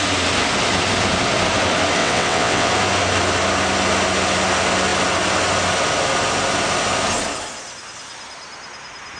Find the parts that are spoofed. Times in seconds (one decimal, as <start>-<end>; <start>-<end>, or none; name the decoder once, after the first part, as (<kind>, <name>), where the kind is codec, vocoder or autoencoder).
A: 2.0-2.7 (vocoder, WaveNeXt)